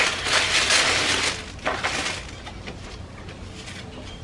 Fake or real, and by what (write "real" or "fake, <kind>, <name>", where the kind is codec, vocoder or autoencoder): real